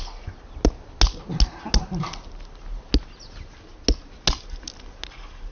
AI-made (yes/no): no